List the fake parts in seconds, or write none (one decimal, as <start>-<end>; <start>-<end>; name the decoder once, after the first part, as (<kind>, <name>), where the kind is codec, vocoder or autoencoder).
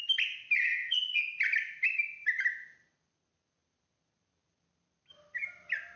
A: 0.6-1.2 (vocoder, HiFi-GAN)